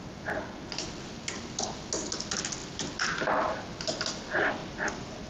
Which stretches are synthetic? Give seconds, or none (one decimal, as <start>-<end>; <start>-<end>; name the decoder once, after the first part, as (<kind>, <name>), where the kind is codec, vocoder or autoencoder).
4.6-5.3 (vocoder, BigVGAN v2)